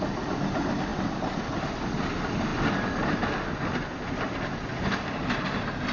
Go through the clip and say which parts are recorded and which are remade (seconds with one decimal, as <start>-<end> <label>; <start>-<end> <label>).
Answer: 0.0-5.9 recorded